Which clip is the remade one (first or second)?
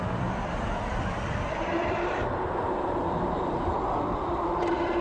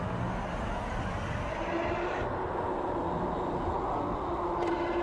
first